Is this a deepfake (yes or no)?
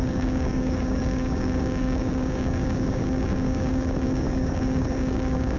yes